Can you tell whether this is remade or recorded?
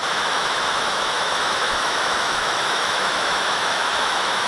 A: remade